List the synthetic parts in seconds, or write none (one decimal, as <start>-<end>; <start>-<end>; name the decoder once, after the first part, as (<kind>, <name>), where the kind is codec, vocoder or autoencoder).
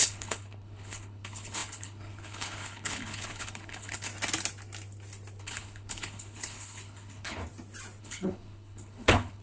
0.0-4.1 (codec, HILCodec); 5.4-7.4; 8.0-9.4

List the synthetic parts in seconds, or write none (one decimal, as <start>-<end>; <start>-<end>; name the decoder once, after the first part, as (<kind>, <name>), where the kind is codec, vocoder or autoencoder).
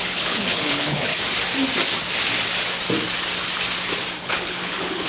0.0-1.1 (codec, HILCodec); 4.2-5.1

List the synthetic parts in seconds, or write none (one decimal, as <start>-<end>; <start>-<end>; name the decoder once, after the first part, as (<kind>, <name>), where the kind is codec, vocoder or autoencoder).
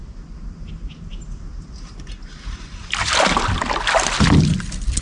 none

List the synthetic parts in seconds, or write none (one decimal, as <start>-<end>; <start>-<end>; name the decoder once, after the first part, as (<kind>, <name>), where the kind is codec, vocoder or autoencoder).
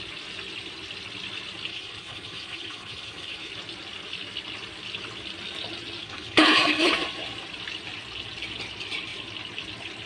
1.7-3.5 (codec, HILCodec); 6.0-6.9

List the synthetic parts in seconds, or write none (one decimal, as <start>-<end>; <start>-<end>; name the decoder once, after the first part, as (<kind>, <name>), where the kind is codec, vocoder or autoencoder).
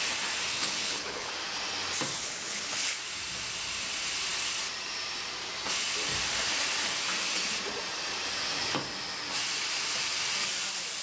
0.6-1.3 (codec, HILCodec); 2.1-3.0